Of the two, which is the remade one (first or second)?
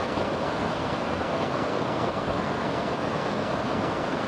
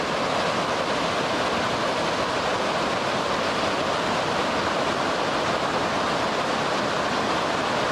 first